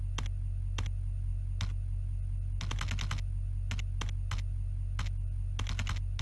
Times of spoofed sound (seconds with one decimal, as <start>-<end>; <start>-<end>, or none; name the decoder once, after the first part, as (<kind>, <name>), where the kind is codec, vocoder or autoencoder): none